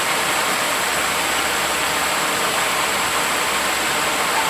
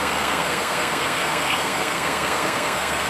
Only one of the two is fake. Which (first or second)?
second